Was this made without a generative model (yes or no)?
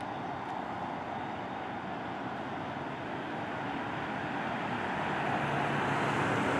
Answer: yes